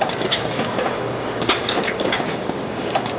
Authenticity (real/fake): fake